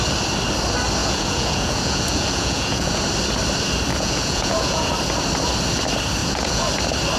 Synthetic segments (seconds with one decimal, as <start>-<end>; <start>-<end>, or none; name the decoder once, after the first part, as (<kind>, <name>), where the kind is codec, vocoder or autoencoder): 1.0-3.0 (vocoder, Vocos); 3.9-4.9; 6.2-6.7